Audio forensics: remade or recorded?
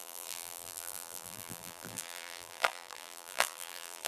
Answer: remade